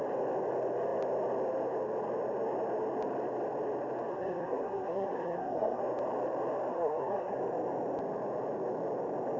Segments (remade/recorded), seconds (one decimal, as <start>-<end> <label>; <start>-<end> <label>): 0.0-4.1 recorded; 4.1-5.8 remade; 5.8-6.7 recorded; 6.7-7.4 remade; 7.4-9.4 recorded